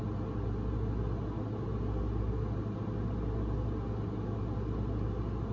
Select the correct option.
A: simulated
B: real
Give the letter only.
B